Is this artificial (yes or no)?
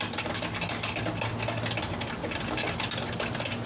no